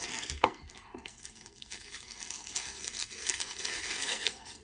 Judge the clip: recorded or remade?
remade